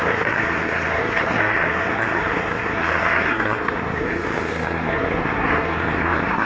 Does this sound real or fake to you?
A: fake